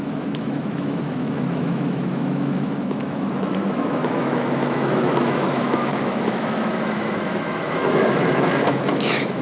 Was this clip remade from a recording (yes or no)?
yes